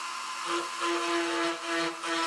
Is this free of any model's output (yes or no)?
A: yes